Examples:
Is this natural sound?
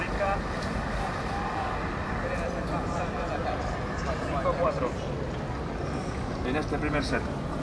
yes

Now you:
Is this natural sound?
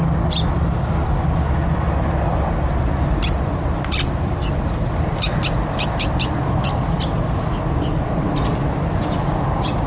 yes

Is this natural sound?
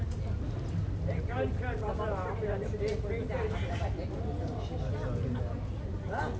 yes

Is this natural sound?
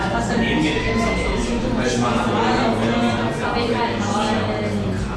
yes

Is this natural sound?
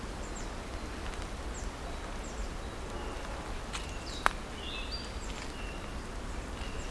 yes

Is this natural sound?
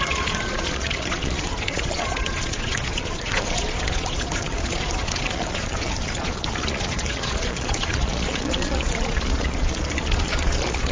no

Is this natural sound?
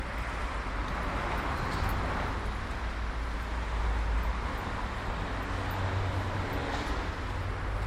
yes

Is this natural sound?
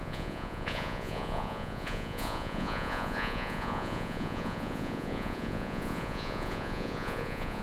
no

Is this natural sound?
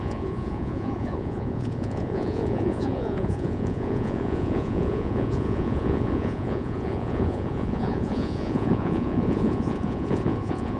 no